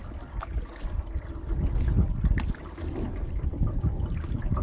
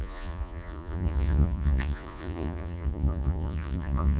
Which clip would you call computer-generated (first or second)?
second